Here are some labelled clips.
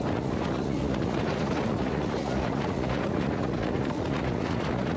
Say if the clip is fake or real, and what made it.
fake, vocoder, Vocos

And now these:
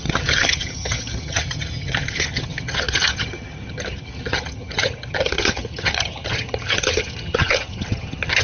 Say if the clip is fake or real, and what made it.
fake, vocoder, HiFi-GAN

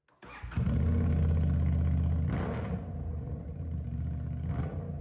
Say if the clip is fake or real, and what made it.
real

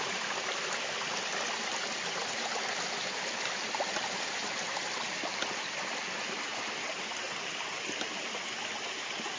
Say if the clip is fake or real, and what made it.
real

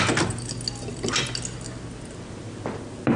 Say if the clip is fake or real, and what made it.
real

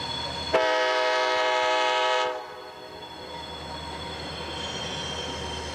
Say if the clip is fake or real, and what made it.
real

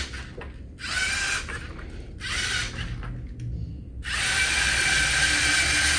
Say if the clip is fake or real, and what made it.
real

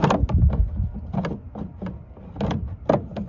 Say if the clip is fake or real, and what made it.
real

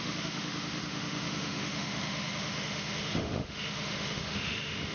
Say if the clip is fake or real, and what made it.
fake, autoencoder, DAC-VAE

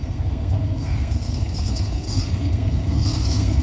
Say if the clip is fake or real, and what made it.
fake, codec, SNAC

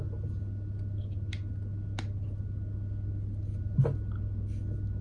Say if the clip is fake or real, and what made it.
real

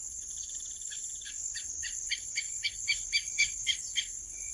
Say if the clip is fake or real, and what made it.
fake, codec, HILCodec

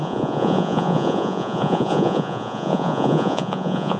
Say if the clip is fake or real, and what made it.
fake, vocoder, Vocos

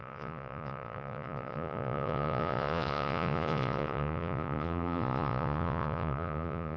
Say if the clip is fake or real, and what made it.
fake, vocoder, Vocos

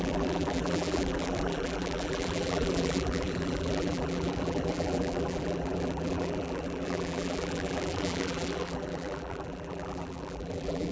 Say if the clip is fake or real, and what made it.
fake, vocoder, BigVGAN v2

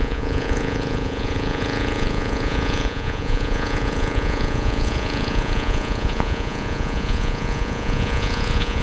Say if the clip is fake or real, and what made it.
fake, vocoder, Vocos